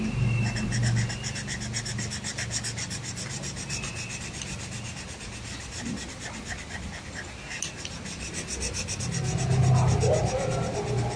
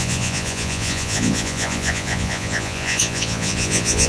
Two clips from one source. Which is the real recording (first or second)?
first